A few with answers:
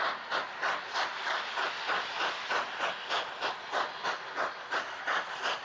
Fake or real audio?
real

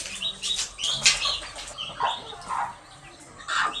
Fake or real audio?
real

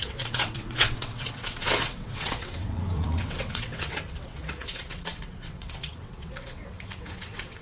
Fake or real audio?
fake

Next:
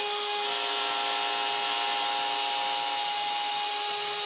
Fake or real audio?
real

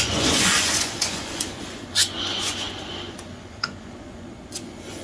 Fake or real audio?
fake